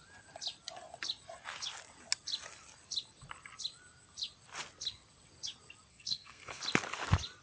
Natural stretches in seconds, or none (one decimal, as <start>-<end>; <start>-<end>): 0.0-5.9; 6.6-7.4